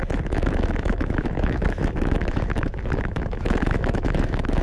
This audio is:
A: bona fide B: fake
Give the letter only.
B